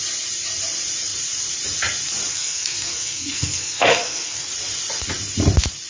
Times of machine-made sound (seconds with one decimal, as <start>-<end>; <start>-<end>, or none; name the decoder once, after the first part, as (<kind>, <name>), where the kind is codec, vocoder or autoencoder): 2.3-4.4 (codec, SNAC)